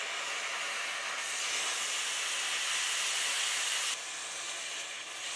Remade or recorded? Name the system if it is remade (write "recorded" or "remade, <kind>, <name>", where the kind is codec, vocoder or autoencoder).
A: recorded